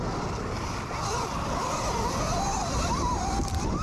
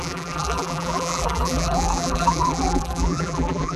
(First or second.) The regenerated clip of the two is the second